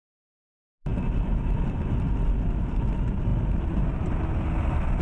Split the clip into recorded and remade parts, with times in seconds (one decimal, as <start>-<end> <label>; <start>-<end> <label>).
0.0-5.0 recorded